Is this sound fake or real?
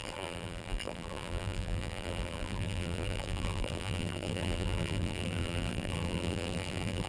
fake